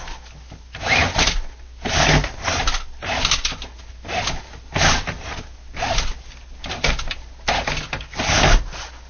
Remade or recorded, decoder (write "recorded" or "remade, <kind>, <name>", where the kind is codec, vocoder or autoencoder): recorded